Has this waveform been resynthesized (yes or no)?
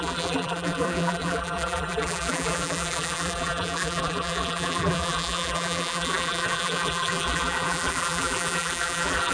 yes